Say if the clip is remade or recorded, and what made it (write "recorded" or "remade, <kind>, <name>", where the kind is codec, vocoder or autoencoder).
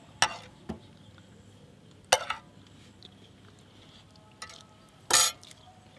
recorded